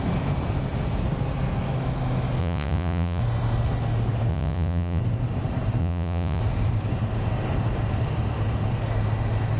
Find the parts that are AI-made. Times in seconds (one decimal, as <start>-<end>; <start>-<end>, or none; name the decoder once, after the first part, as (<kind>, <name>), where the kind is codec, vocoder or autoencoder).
2.4-3.2 (vocoder, Vocos); 4.3-5.0; 5.8-6.4